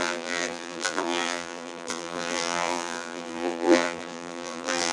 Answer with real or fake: fake